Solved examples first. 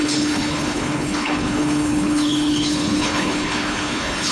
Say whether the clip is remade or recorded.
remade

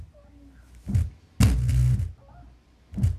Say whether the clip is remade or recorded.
recorded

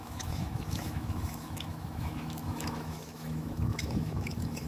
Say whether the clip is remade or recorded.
remade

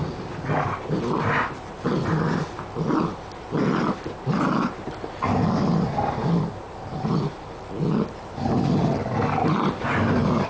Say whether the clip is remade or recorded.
recorded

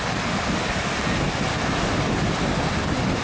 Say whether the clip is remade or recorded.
recorded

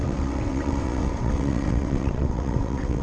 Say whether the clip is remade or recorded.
remade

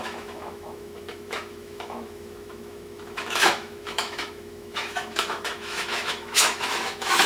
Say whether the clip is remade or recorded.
remade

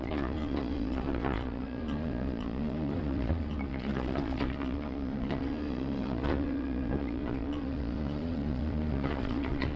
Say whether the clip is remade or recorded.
remade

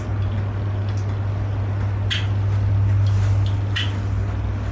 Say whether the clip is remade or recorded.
recorded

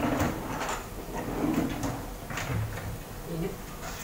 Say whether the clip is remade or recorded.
recorded